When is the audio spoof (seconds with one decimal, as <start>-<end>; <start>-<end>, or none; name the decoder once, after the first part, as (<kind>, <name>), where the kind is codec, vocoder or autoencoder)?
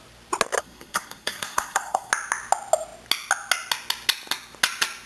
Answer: 0.6-2.1 (codec, SNAC)